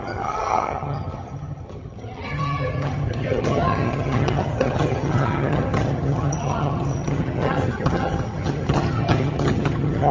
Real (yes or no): no